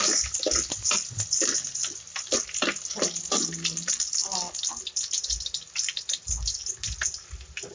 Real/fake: real